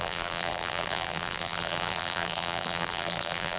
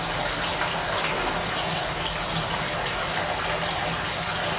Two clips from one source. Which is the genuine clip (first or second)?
second